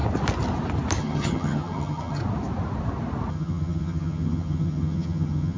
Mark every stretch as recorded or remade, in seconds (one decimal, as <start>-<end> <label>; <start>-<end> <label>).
0.0-1.0 recorded; 1.0-2.2 remade; 2.2-3.3 recorded; 3.3-5.6 remade

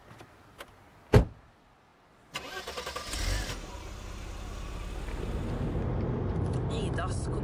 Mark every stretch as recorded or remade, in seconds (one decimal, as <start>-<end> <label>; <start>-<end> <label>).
0.0-7.4 recorded